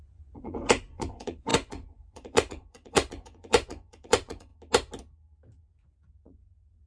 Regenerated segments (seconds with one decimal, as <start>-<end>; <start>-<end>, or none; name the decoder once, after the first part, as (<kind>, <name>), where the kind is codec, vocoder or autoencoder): 0.0-4.5 (vocoder, Vocos); 5.7-6.9